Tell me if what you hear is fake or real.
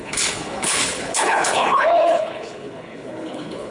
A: fake